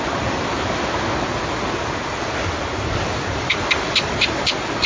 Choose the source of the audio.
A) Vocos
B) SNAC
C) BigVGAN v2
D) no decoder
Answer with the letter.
D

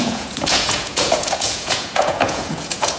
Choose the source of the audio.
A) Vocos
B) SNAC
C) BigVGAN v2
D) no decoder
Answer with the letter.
A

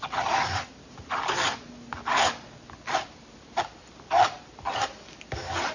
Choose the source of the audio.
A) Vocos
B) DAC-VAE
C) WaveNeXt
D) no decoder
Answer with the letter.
D